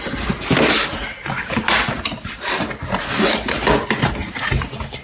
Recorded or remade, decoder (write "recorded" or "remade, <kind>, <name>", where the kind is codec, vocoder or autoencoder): recorded